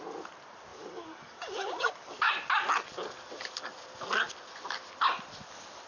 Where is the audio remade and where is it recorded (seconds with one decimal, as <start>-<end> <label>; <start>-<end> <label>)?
0.0-0.7 recorded; 0.7-2.3 remade; 2.3-5.9 recorded